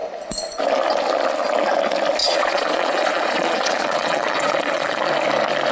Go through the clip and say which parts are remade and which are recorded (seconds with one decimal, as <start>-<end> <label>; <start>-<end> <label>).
0.0-2.2 recorded; 2.2-5.1 remade; 5.1-5.7 recorded